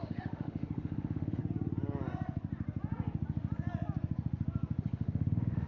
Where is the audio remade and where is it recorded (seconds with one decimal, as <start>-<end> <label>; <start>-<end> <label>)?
0.0-1.4 remade; 1.4-4.8 recorded; 4.8-5.7 remade